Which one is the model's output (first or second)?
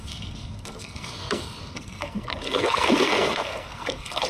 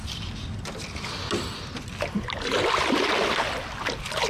first